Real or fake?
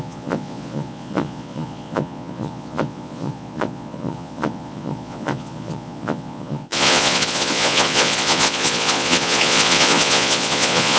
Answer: fake